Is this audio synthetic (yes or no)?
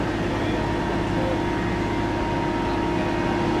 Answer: no